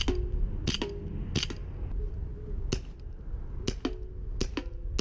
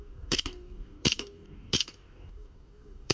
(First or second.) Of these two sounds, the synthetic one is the second